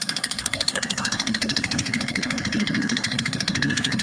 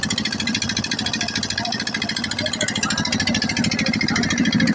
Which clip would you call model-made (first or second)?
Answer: first